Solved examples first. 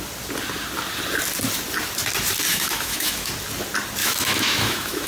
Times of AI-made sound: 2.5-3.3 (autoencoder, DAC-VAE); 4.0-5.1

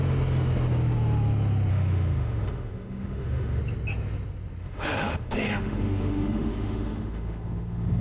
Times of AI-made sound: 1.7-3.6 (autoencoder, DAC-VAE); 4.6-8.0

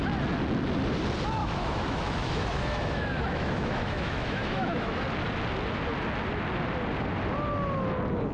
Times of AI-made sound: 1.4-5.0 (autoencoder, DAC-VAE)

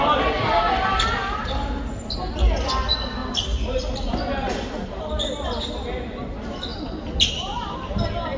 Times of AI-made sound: none

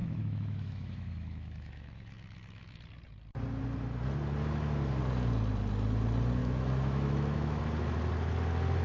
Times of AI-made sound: 0.0-2.8 (autoencoder, DAC-VAE); 6.4-7.6

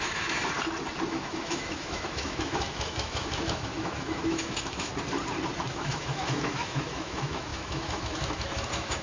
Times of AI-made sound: 0.0-0.4 (autoencoder, DAC-VAE); 1.1-4.9; 5.7-9.0

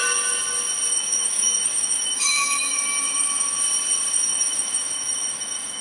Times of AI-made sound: 0.9-3.6 (autoencoder, DAC-VAE); 4.1-5.8